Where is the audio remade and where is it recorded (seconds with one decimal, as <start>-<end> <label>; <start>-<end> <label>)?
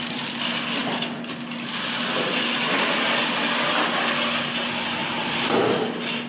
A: 0.0-5.0 recorded; 5.0-5.7 remade; 5.7-6.3 recorded